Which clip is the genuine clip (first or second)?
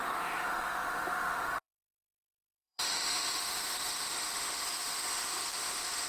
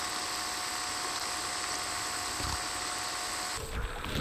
second